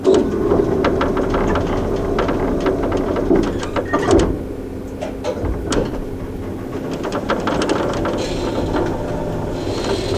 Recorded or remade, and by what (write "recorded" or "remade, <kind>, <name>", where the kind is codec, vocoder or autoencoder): recorded